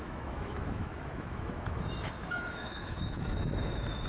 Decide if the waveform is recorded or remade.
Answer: remade